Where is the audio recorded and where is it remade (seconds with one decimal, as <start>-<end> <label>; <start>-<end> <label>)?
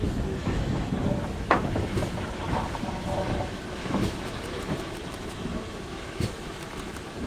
0.0-7.3 remade